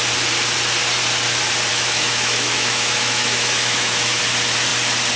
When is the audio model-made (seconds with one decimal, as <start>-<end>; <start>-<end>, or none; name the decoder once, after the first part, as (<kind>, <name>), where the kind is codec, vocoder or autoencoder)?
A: 1.7-4.2 (autoencoder, DAC-VAE)